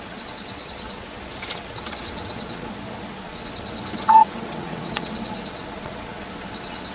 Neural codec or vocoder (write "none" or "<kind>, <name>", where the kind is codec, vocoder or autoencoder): vocoder, WaveNeXt